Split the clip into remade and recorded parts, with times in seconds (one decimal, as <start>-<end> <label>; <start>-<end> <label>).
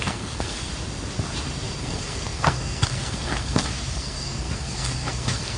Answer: 0.0-0.7 remade; 0.7-1.8 recorded; 1.8-5.6 remade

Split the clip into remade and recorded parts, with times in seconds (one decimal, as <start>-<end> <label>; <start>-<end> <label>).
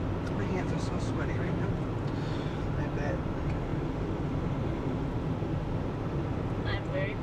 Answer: 0.0-0.4 recorded; 0.4-1.7 remade; 1.7-7.2 recorded